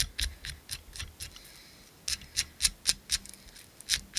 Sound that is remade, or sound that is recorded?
recorded